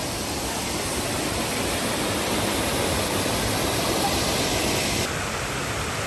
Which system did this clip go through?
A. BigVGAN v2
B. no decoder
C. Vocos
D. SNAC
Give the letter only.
A